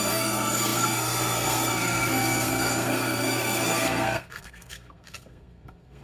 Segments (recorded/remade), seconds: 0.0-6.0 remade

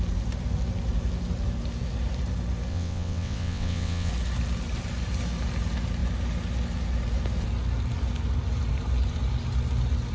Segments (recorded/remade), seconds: 0.0-2.7 recorded; 2.7-4.1 remade; 4.1-10.1 recorded

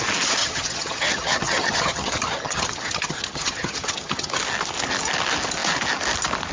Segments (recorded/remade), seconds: 0.0-0.4 recorded; 0.4-4.3 remade; 4.3-6.5 recorded

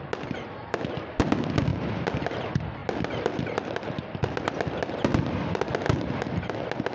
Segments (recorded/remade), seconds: 0.0-6.9 recorded

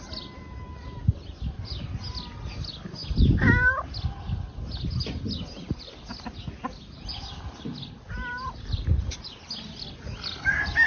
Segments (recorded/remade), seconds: 0.0-10.9 recorded

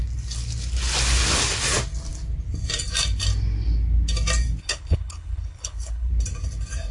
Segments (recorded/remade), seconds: 0.0-4.6 recorded; 4.6-6.1 remade; 6.1-6.9 recorded